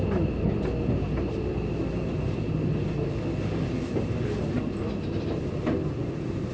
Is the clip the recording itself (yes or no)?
yes